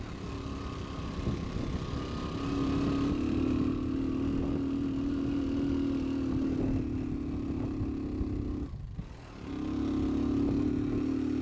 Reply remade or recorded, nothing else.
recorded